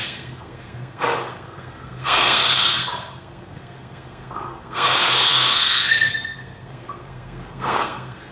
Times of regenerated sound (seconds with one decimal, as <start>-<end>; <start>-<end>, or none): 0.0-8.3